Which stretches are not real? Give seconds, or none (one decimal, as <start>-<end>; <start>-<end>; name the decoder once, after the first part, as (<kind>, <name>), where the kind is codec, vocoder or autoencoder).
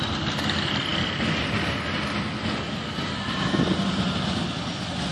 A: none